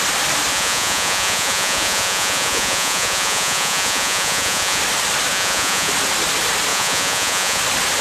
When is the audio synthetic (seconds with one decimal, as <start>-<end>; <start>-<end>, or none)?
0.5-4.8; 5.3-5.9; 6.7-7.6